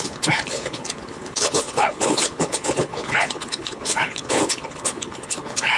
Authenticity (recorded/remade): remade